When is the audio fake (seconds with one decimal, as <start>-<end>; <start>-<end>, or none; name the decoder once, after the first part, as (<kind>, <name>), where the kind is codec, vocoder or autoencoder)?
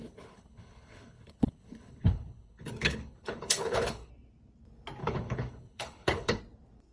0.0-4.1 (codec, HILCodec); 5.0-6.4